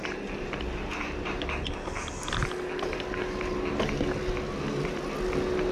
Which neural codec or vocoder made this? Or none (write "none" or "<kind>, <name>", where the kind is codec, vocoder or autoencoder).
none